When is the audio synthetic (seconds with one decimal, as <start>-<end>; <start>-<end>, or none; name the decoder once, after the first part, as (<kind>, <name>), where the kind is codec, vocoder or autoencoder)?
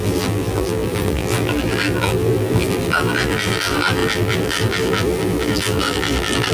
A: 0.0-6.5 (vocoder, BigVGAN v2)